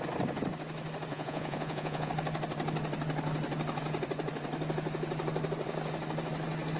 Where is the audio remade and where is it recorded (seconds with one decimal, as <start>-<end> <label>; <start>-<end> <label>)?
0.0-1.1 recorded; 1.1-2.1 remade; 2.1-6.8 recorded